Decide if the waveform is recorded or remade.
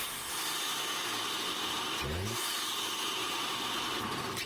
recorded